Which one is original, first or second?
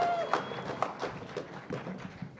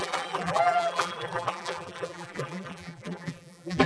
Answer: first